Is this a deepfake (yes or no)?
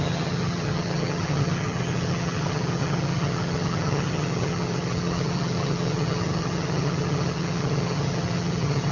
yes